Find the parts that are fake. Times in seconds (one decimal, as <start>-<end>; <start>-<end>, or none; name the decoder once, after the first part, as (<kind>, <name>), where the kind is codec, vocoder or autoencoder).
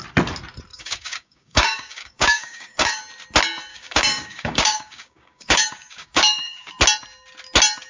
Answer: 0.7-3.0 (codec, DAC); 3.7-6.7